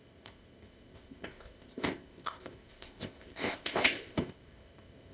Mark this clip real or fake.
fake